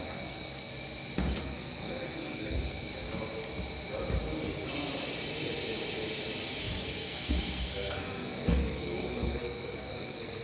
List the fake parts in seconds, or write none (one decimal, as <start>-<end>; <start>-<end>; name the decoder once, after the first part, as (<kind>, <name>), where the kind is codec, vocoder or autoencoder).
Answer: 0.0-0.7 (codec, SNAC); 1.4-2.9; 6.6-10.4